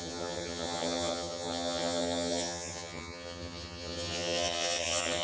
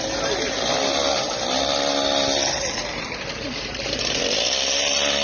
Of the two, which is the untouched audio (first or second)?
second